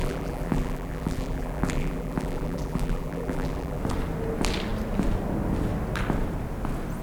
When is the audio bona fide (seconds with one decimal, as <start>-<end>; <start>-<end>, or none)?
3.8-7.0